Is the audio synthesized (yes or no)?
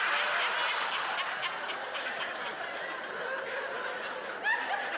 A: no